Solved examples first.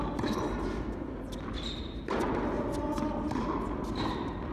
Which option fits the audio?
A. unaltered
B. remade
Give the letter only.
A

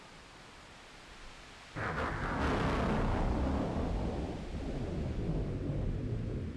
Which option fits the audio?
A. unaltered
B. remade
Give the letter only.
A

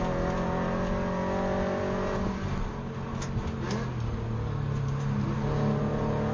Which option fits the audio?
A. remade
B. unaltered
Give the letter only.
B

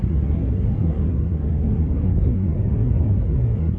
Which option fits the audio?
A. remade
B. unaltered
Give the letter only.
A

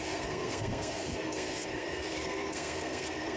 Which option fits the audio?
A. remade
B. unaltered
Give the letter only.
A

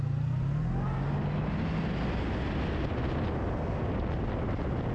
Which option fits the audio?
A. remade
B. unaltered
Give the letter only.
B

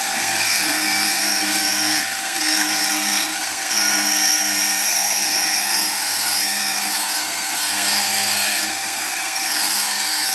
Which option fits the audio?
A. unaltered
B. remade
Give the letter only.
B